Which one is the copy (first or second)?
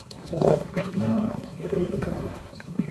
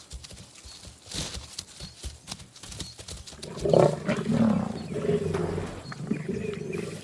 first